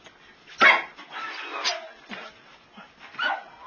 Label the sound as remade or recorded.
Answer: recorded